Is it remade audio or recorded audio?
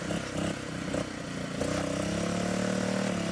recorded